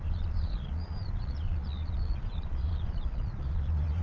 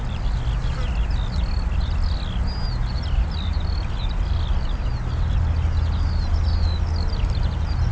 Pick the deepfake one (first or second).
first